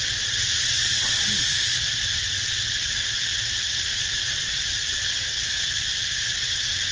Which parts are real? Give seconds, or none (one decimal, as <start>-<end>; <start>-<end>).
none